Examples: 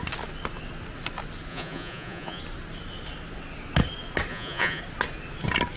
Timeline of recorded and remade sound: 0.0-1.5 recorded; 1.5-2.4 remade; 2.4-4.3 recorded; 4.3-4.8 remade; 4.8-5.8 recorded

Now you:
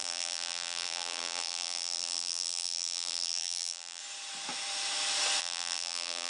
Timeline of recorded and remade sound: 0.0-4.0 remade; 4.0-5.4 recorded; 5.4-6.3 remade

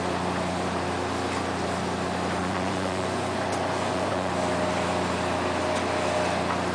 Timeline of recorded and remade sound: 0.0-2.4 recorded; 2.4-4.3 remade; 4.3-6.7 recorded

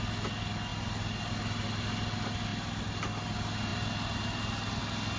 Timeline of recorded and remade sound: 0.0-5.2 recorded

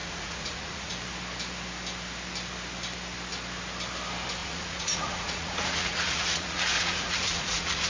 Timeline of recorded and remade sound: 0.0-0.9 remade; 0.9-4.4 recorded; 4.4-7.9 remade

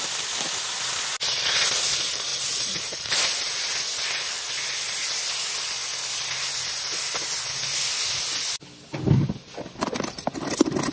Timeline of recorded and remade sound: 0.0-2.3 recorded; 2.3-4.4 remade; 4.4-10.9 recorded

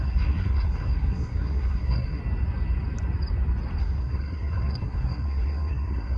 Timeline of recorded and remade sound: 0.0-2.2 remade; 2.2-3.8 recorded; 3.8-6.2 remade